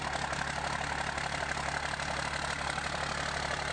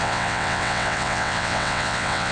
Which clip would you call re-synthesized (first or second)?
second